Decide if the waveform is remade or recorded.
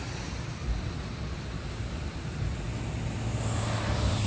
recorded